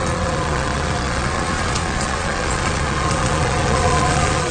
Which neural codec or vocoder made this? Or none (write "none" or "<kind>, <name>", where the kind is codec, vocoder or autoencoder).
vocoder, Vocos